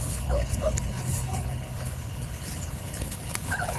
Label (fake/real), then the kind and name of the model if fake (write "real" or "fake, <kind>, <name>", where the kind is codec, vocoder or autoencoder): fake, codec, HILCodec